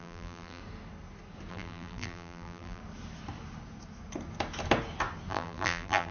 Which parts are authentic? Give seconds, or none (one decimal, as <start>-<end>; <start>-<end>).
0.6-1.5; 2.8-5.3